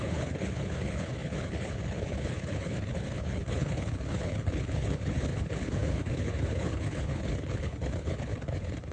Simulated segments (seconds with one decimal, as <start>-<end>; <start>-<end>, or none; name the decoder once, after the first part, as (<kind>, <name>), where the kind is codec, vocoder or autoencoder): 0.0-8.9 (codec, HILCodec)